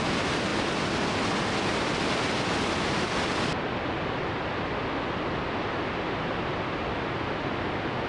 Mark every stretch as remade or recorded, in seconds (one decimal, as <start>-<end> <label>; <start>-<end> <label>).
0.0-8.1 recorded